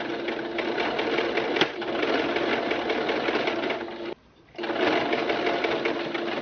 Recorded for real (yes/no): yes